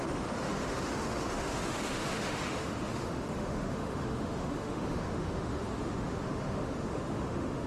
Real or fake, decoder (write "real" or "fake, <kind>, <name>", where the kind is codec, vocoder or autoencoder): fake, autoencoder, DAC-VAE